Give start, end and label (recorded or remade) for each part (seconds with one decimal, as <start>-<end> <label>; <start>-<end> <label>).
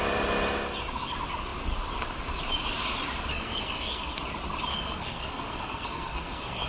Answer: 0.0-3.3 recorded; 3.3-4.2 remade; 4.2-4.7 recorded; 4.7-6.7 remade